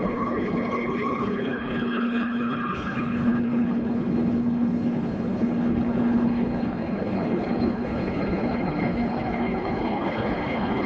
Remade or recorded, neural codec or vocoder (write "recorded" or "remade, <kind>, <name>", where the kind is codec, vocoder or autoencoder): remade, codec, HILCodec